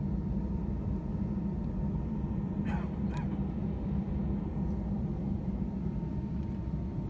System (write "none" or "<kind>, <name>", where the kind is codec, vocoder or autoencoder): none